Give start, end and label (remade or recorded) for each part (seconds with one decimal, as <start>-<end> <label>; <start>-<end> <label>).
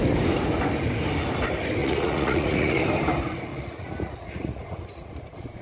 0.0-1.8 recorded; 1.8-2.8 remade; 2.8-3.5 recorded; 3.5-5.6 remade